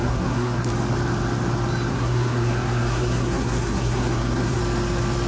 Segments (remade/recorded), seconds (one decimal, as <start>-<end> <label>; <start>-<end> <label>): 0.0-0.7 remade; 0.7-1.9 recorded; 1.9-4.6 remade; 4.6-5.3 recorded